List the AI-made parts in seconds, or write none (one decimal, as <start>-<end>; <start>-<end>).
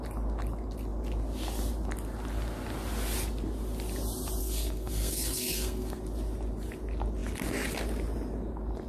4.4-6.0